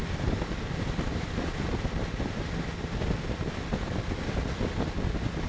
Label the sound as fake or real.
real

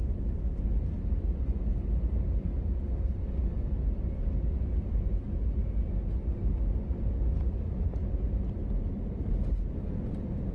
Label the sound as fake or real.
real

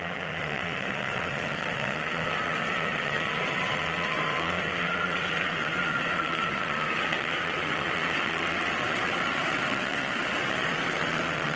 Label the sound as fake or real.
fake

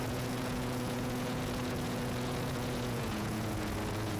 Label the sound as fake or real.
fake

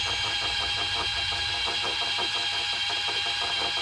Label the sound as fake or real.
real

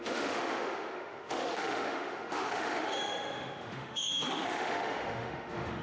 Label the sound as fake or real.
fake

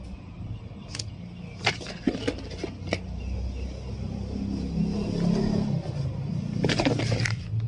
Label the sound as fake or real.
real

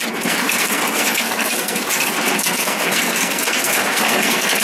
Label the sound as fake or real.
fake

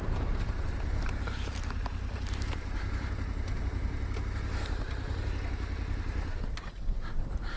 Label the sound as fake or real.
fake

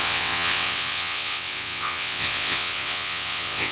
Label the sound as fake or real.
fake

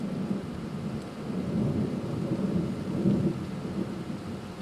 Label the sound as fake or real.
real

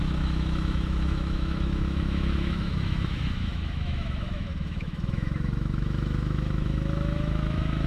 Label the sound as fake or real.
fake